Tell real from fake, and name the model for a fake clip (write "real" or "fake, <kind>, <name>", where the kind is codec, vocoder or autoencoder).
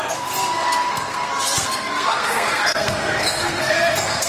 fake, codec, SNAC